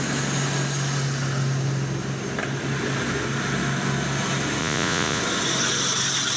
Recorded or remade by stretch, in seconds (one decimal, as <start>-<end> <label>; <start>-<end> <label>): 0.0-4.6 recorded; 4.6-5.2 remade; 5.2-6.4 recorded